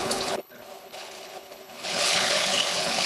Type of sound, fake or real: fake